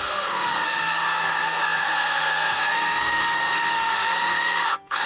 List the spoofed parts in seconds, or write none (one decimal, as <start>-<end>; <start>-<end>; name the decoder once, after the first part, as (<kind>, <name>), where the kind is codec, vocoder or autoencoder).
0.0-5.1 (codec, SNAC)